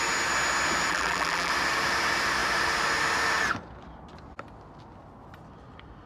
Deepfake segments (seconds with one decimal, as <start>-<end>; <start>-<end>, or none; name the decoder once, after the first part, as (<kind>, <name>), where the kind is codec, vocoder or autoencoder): 0.9-1.5 (vocoder, BigVGAN v2)